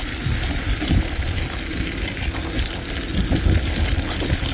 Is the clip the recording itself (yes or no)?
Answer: yes